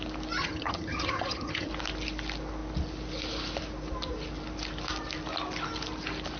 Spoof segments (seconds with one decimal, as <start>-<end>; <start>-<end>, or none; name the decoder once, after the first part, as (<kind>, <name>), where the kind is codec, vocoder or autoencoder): 0.4-1.7 (vocoder, HiFi-GAN)

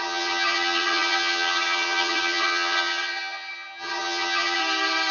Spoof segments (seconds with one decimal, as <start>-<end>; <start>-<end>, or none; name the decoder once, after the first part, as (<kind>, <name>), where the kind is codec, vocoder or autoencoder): 0.0-4.6 (vocoder, HiFi-GAN)

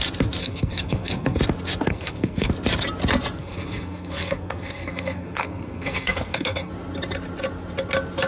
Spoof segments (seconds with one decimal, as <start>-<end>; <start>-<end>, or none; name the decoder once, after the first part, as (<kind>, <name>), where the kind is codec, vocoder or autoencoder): 0.4-1.4 (codec, SNAC); 1.9-2.5; 3.4-6.7

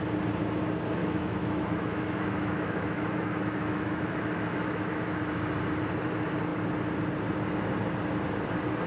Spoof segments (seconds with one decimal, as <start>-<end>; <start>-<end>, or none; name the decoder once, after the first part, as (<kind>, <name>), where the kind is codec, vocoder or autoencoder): 1.0-5.1 (autoencoder, DAC-VAE)

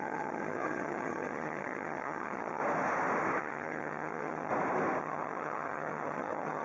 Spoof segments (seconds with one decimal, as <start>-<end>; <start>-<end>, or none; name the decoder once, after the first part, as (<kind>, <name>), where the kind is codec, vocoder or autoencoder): 0.0-2.6 (vocoder, HiFi-GAN); 3.4-4.5; 5.0-6.6

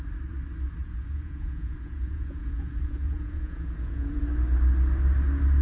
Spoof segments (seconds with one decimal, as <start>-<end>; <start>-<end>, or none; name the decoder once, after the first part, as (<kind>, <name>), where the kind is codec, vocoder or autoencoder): 0.8-4.2 (vocoder, Vocos)

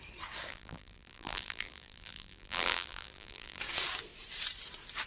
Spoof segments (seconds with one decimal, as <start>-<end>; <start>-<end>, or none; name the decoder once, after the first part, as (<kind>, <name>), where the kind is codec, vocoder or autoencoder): 0.5-3.6 (vocoder, BigVGAN v2)